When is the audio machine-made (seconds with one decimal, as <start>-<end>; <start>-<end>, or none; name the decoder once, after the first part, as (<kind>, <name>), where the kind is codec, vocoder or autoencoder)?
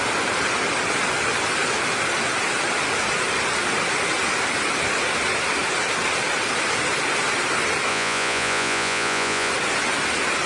7.9-9.5 (vocoder, Vocos)